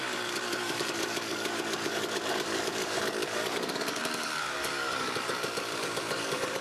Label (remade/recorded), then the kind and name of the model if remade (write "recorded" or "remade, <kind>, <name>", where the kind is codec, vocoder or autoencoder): remade, codec, DAC